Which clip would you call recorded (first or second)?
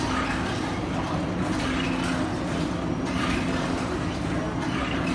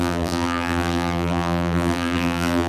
first